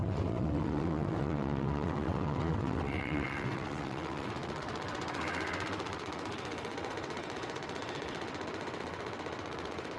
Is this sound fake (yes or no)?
yes